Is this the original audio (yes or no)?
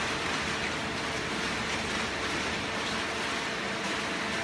yes